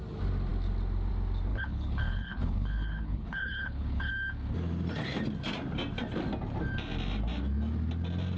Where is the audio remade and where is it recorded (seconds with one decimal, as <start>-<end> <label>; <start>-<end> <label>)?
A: 0.0-1.5 recorded; 1.5-4.1 remade; 4.1-8.4 recorded